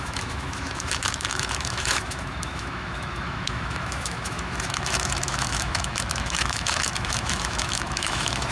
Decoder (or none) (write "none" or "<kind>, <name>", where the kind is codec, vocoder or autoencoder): autoencoder, DAC-VAE